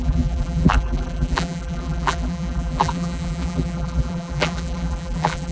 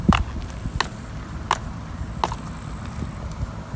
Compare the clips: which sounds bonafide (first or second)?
second